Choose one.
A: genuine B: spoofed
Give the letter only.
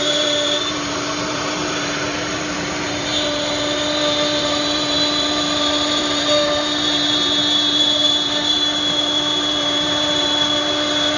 B